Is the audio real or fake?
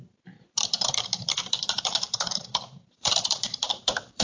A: fake